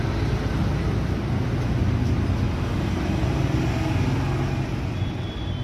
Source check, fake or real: real